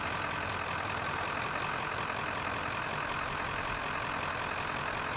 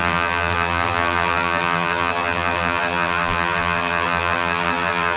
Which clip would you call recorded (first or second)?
first